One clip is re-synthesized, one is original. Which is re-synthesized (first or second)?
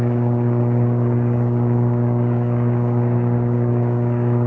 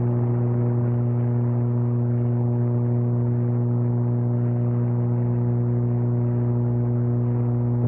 first